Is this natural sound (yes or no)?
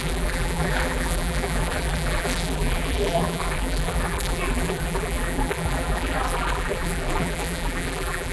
no